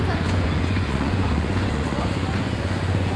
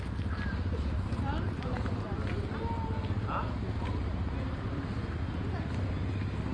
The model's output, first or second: first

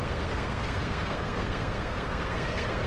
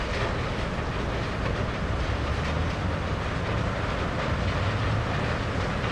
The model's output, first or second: first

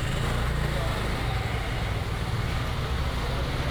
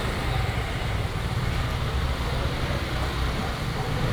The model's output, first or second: second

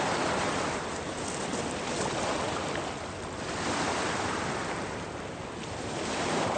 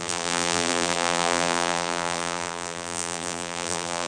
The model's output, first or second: second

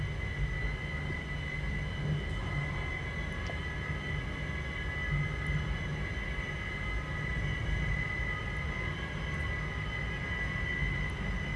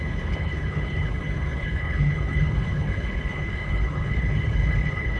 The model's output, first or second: second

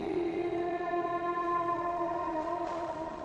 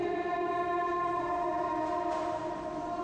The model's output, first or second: first